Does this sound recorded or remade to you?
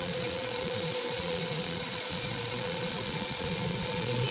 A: remade